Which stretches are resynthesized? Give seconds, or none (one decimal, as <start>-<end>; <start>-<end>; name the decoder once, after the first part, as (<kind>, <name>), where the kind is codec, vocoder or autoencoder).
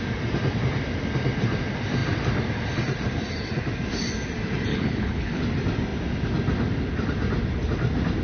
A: 4.7-5.4 (codec, HILCodec)